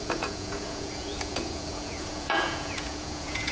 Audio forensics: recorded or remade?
remade